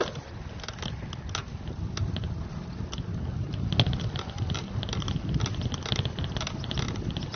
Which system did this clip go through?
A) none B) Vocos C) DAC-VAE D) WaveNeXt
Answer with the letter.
A